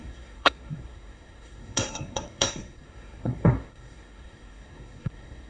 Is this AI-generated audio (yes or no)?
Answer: yes